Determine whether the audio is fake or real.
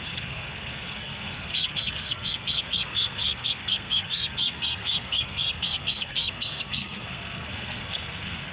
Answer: fake